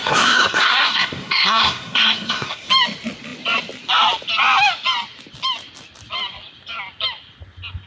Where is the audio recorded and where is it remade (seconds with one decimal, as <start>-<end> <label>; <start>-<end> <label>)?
0.0-2.7 remade; 2.7-7.9 recorded